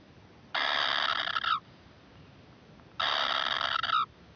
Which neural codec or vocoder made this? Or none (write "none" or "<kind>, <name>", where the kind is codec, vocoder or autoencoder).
none